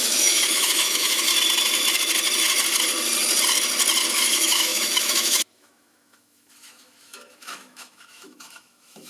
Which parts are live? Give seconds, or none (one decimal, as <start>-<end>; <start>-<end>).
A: 1.3-4.1